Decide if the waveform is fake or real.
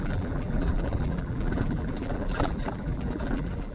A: fake